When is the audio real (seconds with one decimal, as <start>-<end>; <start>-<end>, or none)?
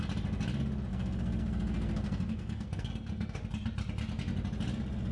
0.0-0.9; 3.4-5.1